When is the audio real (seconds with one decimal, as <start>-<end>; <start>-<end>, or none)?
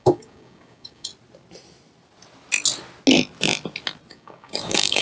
1.1-4.1